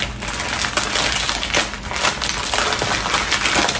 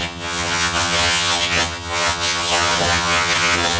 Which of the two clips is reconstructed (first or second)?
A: second